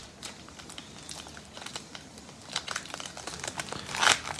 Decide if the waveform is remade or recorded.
recorded